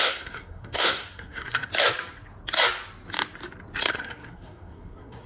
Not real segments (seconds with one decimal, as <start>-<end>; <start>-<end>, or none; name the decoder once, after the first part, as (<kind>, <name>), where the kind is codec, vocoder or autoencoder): 0.0-1.7 (codec, SNAC); 3.8-5.3